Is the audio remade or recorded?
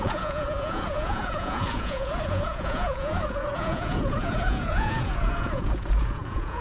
remade